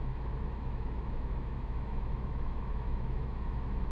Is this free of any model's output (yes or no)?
no